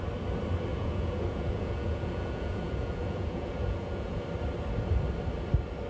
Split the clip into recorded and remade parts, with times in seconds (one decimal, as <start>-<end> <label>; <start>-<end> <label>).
0.0-0.7 recorded; 0.7-4.2 remade; 4.2-5.9 recorded